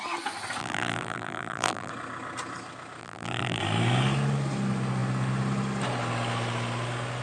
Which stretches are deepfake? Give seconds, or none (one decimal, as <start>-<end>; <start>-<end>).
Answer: 0.6-1.9; 3.0-3.6

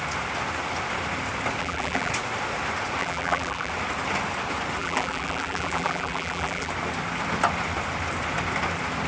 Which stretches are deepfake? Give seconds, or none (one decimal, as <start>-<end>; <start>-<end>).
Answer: 1.6-2.1; 3.0-3.7; 4.8-6.7